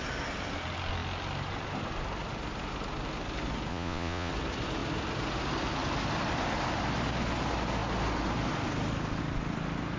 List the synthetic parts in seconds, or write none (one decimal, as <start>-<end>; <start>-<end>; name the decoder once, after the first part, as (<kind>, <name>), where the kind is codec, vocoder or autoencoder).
3.7-4.3 (vocoder, Vocos)